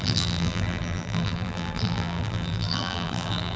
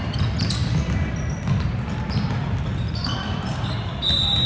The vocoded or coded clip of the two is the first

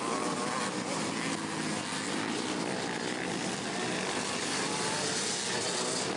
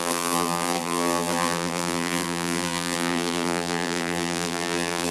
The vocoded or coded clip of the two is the second